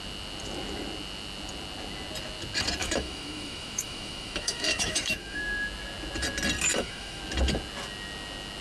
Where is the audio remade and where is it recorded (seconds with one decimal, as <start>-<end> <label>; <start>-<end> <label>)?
0.0-2.8 recorded; 2.8-5.4 remade; 5.4-6.7 recorded; 6.7-7.2 remade; 7.2-8.6 recorded